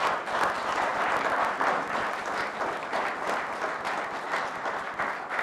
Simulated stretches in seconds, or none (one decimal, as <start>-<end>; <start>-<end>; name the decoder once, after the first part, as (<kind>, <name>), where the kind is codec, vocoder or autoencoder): none